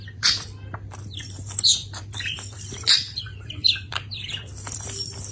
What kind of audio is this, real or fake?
fake